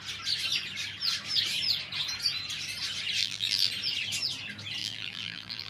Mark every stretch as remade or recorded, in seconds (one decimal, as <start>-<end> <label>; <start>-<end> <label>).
0.0-3.2 recorded; 3.2-3.7 remade; 3.7-4.8 recorded; 4.8-5.7 remade